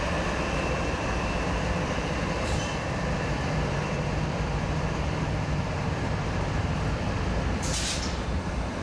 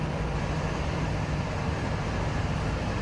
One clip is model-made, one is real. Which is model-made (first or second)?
first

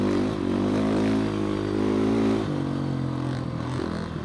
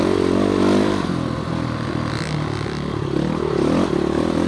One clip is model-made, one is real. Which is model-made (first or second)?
second